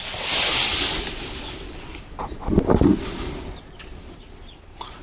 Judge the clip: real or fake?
real